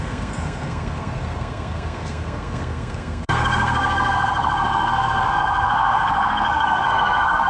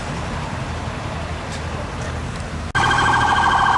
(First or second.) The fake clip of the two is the first